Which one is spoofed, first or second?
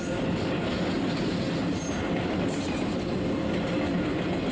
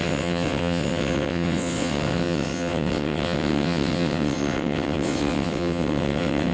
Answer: second